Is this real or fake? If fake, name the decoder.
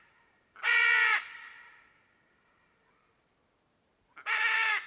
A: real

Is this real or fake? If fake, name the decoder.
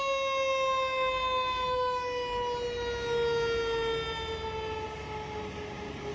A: real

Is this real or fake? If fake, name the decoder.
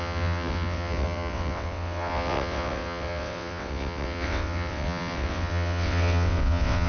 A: fake, vocoder, WaveNeXt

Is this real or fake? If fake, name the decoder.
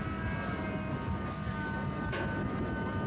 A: real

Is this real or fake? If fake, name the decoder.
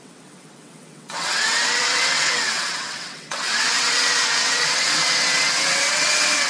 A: fake, vocoder, WaveNeXt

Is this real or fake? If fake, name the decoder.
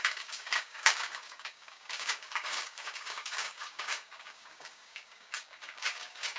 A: fake, codec, DAC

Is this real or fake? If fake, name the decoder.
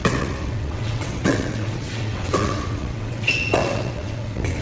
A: fake, vocoder, WaveNeXt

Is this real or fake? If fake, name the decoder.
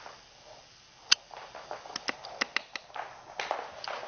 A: real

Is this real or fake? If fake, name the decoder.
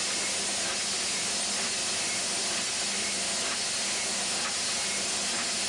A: real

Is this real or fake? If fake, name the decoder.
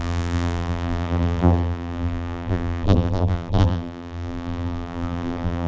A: fake, vocoder, BigVGAN v2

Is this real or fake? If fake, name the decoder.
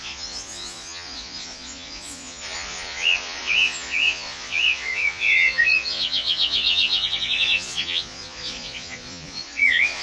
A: fake, vocoder, Vocos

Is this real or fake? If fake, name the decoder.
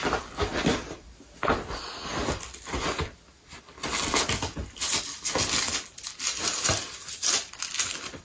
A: real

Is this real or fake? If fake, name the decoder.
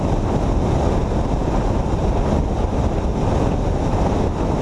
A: real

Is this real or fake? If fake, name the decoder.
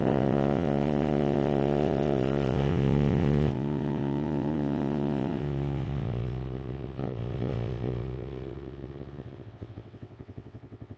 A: fake, vocoder, WaveNeXt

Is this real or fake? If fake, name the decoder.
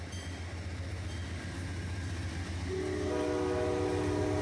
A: real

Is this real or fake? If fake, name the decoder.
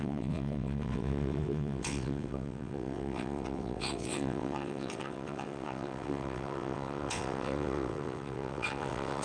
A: fake, vocoder, WaveNeXt